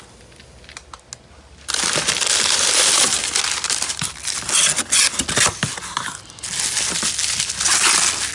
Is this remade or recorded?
recorded